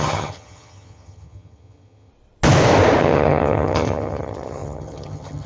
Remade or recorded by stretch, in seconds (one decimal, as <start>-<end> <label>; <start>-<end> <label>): 0.0-2.1 remade; 2.1-3.0 recorded; 3.0-5.5 remade